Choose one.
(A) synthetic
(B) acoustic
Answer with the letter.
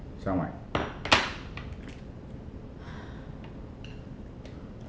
B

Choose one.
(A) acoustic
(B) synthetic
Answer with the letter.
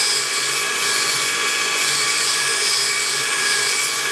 B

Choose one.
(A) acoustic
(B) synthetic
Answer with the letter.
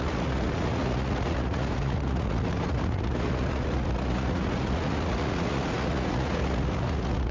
B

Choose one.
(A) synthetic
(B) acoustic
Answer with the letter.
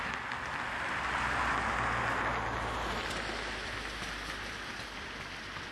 B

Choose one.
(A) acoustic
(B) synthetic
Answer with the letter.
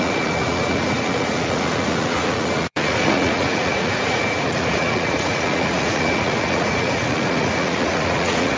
B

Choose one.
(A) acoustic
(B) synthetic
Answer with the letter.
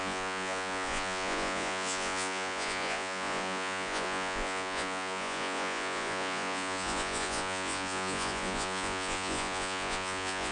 B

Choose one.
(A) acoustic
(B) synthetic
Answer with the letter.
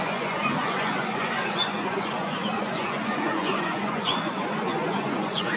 B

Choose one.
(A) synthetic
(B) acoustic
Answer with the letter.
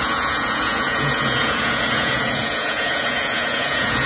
A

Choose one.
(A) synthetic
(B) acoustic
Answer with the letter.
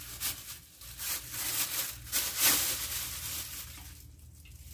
B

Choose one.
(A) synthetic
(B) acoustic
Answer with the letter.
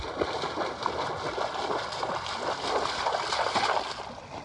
B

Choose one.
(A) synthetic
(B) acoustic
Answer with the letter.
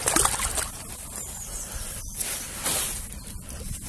B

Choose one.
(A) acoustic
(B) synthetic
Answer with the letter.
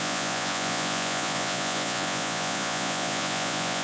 B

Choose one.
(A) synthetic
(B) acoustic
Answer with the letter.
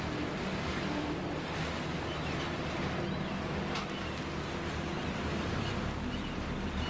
B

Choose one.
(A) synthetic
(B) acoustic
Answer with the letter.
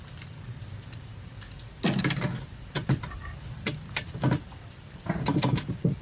B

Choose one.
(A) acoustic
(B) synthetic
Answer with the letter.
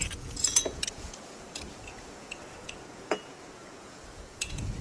B